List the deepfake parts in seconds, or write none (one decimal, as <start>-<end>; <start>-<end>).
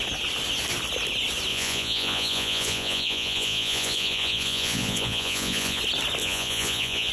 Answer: 1.5-5.8; 6.2-7.1